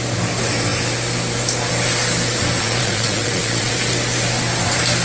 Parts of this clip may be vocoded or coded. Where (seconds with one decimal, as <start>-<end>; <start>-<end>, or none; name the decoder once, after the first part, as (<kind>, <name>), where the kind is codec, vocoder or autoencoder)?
2.6-3.7 (vocoder, Vocos)

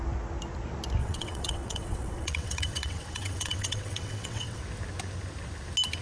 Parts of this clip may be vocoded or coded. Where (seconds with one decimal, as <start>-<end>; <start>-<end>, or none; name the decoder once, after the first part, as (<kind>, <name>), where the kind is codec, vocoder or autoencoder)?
1.0-4.6 (vocoder, WaveNeXt)

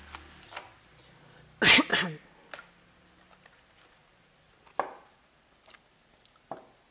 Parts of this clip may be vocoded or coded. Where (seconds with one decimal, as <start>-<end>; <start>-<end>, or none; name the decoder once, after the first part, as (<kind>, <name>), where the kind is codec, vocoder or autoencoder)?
none

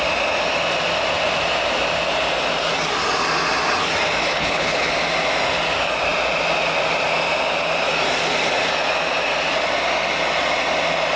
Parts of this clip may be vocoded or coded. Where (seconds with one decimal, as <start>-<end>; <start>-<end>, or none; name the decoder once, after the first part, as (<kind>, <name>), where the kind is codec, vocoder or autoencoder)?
4.2-4.9 (codec, HILCodec)